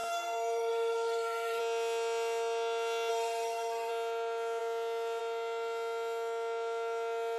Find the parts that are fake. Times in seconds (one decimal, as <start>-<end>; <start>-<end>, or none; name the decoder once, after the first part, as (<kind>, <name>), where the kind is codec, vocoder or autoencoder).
0.0-1.6 (codec, SNAC); 3.1-3.9